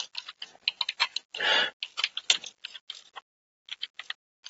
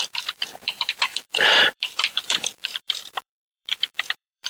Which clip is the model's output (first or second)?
second